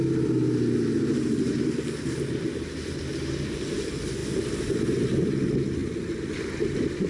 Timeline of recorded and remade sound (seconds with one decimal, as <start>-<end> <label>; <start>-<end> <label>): 0.0-7.1 recorded